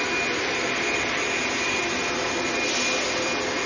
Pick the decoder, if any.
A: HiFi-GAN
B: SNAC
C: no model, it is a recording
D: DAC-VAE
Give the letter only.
C